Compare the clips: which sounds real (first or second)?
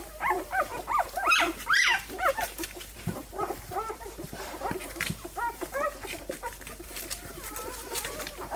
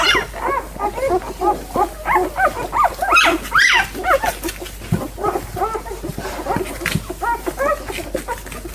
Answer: second